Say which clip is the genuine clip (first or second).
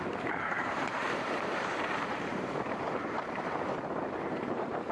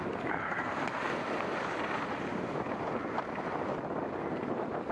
second